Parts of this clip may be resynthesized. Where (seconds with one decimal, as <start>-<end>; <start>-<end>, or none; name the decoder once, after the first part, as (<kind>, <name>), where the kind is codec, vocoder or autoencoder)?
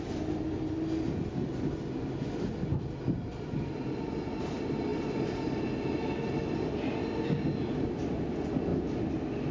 none